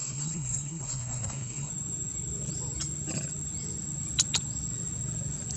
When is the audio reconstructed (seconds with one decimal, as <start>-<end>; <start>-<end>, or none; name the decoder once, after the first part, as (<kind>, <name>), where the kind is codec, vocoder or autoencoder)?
0.0-1.7 (codec, SNAC)